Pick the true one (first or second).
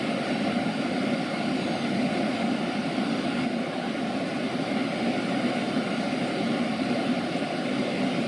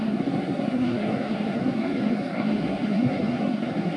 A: first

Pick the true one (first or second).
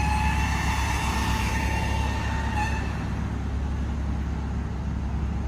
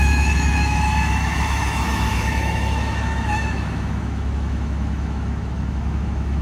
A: first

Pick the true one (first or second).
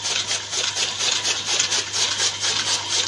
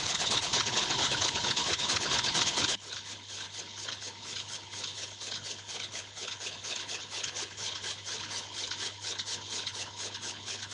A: first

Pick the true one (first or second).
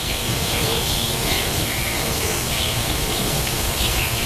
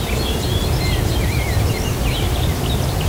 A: second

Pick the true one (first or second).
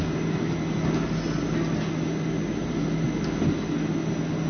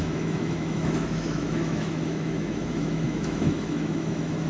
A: first